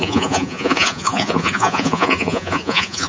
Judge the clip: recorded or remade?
remade